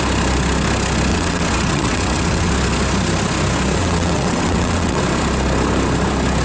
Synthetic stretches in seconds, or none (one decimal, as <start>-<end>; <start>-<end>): 1.1-2.5; 3.8-5.0